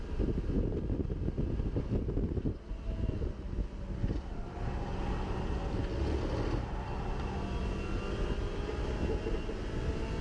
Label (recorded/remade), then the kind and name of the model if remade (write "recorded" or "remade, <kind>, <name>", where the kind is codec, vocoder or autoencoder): recorded